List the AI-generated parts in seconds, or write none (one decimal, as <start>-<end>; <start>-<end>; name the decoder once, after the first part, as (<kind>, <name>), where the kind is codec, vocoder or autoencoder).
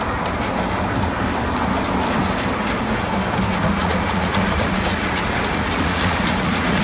3.5-6.8 (vocoder, Vocos)